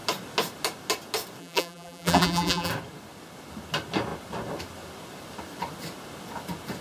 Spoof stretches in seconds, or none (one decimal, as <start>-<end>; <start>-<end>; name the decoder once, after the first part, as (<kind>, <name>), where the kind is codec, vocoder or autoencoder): 1.4-2.7 (vocoder, BigVGAN v2)